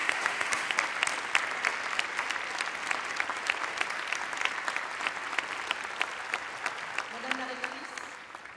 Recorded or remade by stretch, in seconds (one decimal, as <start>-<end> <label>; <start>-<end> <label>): 0.0-0.7 remade; 0.7-8.6 recorded